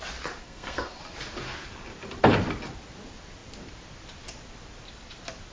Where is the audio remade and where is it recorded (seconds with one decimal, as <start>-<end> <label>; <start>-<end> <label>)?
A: 0.0-0.4 recorded; 0.4-1.0 remade; 1.0-5.5 recorded